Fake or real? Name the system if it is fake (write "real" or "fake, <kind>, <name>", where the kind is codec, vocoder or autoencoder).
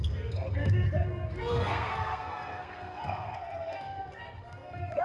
fake, codec, SNAC